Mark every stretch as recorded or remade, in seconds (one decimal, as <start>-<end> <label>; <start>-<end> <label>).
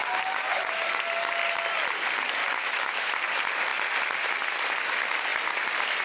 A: 0.0-0.9 remade; 0.9-2.4 recorded; 2.4-3.1 remade; 3.1-6.0 recorded